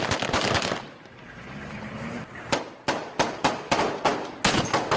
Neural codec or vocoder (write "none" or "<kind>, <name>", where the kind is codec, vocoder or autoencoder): none